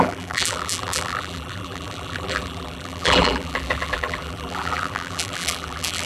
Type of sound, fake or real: fake